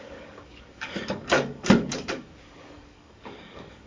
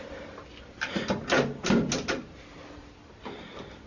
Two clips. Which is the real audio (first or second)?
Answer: second